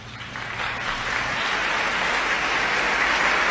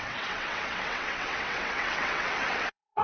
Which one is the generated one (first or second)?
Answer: second